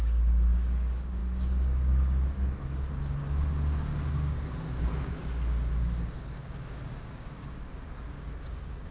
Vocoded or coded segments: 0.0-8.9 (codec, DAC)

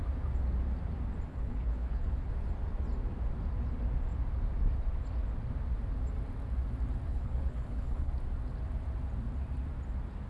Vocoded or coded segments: 1.3-2.3 (codec, HILCodec); 7.1-8.1

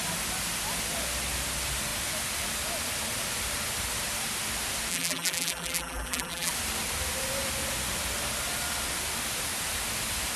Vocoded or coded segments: 4.9-6.5 (vocoder, BigVGAN v2)

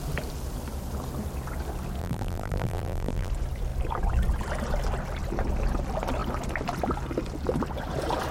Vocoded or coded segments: 2.0-3.3 (vocoder, BigVGAN v2)

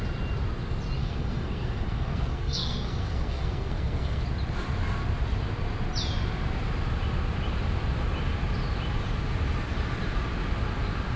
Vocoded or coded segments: 1.0-4.2 (codec, SNAC)